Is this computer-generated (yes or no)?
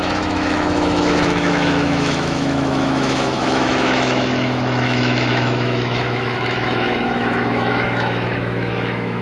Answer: yes